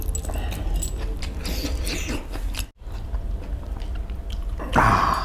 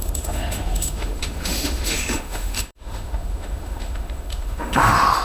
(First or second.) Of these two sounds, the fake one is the second